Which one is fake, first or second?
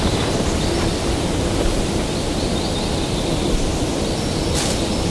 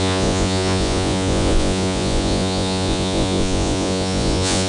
second